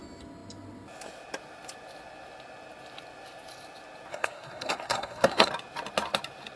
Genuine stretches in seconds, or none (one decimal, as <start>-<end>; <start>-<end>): 0.0-4.1; 5.5-6.6

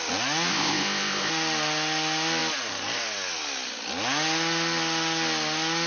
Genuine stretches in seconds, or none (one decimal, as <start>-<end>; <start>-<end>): 0.0-0.5; 1.3-5.9

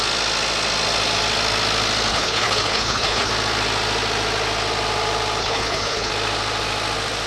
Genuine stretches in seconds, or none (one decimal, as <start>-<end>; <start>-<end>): 0.0-2.1; 3.3-5.4; 6.1-7.3

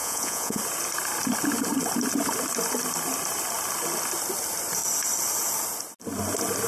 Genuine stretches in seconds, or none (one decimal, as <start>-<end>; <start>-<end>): 0.6-6.7

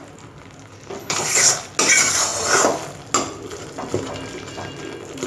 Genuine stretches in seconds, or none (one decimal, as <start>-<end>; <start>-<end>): 0.0-1.0; 1.5-5.3

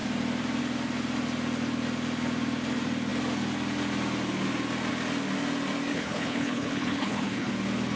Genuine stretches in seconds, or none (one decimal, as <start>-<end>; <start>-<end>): 0.0-5.9; 7.5-8.0

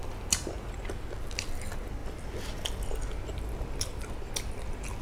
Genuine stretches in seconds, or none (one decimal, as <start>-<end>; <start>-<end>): 0.0-5.0